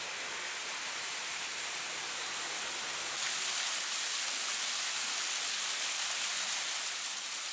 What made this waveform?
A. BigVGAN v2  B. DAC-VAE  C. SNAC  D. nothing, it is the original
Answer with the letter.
D